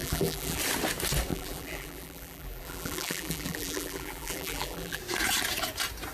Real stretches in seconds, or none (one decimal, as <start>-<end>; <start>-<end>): 0.6-1.3; 5.0-6.1